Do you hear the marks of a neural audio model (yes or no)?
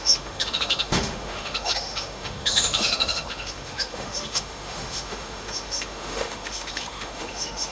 yes